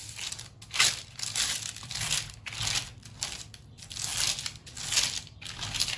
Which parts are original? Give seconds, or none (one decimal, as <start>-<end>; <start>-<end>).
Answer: 0.0-6.0